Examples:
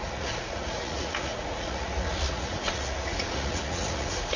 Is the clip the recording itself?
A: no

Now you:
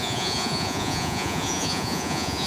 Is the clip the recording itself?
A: no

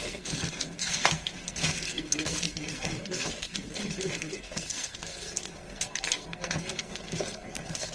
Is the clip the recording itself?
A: no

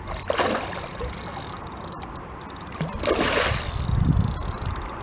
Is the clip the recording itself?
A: yes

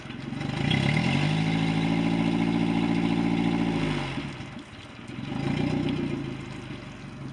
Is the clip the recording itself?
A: yes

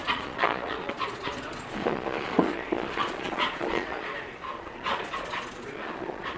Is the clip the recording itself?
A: no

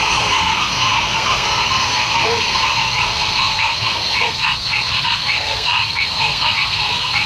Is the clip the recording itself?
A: no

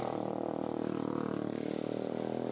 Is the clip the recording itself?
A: yes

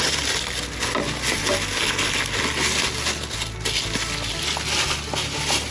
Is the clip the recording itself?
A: yes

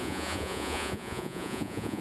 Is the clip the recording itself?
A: no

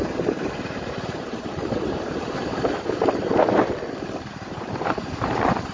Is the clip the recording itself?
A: no